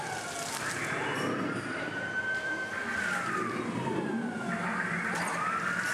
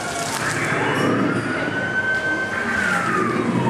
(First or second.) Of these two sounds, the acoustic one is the second